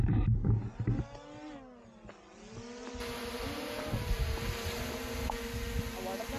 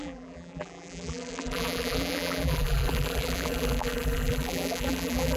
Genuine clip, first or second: first